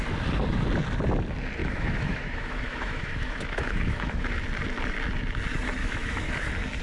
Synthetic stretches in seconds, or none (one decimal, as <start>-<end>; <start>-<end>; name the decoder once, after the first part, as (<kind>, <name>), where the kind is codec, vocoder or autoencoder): 1.6-4.3 (autoencoder, DAC-VAE); 5.8-6.3